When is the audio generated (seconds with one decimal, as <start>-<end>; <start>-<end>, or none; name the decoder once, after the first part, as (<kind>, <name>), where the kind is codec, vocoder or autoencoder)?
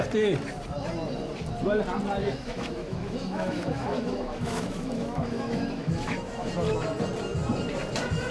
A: 2.2-6.5 (autoencoder, DAC-VAE)